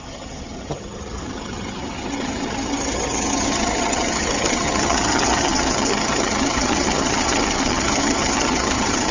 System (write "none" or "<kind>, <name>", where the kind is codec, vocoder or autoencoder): vocoder, HiFi-GAN